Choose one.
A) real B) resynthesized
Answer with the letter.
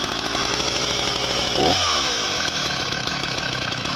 B